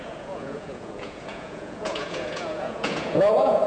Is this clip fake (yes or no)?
yes